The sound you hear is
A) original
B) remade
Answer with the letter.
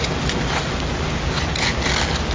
A